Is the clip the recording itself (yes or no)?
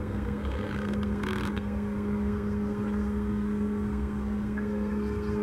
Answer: no